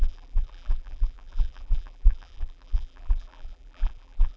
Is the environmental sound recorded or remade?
remade